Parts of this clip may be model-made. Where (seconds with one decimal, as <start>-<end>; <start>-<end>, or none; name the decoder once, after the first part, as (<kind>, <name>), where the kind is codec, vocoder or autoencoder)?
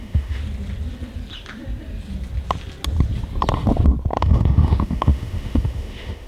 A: 0.0-0.4 (autoencoder, DAC-VAE); 4.2-6.3